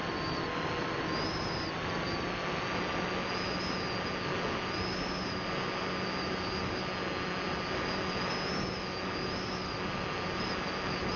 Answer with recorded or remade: recorded